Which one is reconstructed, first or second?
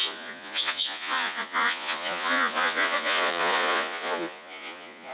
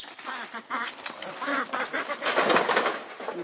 first